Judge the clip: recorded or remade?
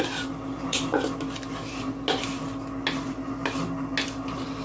recorded